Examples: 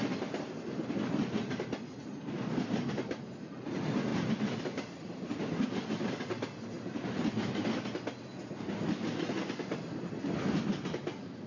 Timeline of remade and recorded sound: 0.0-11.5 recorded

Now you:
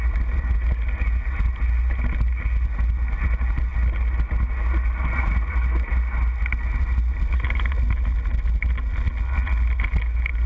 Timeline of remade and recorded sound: 0.0-10.5 recorded

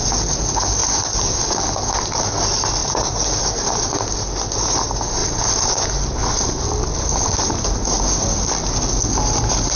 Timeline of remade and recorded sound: 0.0-0.8 recorded; 0.8-1.4 remade; 1.4-2.8 recorded; 2.8-3.9 remade; 3.9-5.2 recorded; 5.2-5.9 remade; 5.9-9.7 recorded

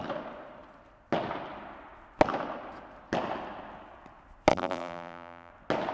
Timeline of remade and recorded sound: 0.0-4.5 recorded; 4.5-5.5 remade; 5.5-5.9 recorded